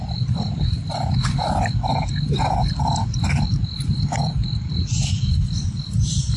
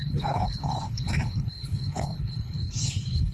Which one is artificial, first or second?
second